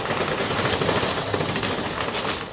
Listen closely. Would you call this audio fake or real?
real